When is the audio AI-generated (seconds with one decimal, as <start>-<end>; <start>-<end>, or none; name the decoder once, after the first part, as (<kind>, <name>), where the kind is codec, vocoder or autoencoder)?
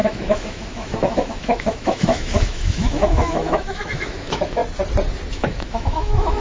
0.0-4.6 (autoencoder, DAC-VAE); 5.3-6.4